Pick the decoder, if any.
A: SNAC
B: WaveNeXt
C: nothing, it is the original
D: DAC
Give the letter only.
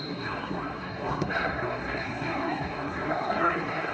A